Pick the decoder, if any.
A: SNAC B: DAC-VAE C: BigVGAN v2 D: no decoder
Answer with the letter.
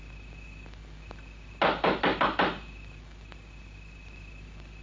D